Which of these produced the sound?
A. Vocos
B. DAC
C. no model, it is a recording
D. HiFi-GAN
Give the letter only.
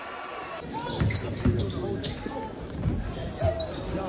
C